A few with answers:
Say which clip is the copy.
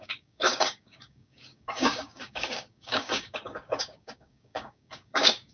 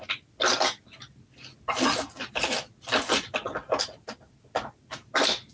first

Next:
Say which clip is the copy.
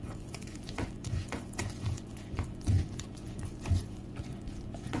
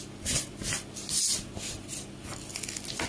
first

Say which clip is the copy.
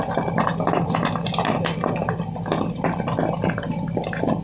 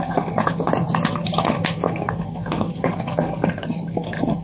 second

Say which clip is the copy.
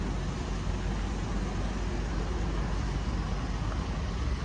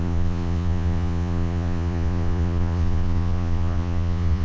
second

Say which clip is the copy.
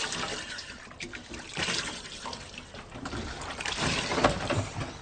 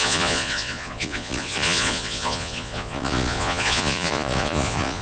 second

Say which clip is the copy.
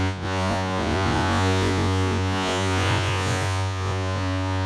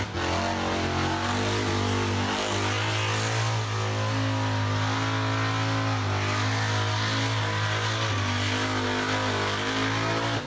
first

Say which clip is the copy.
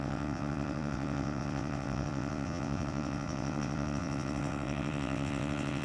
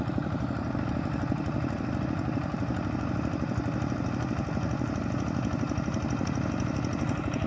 first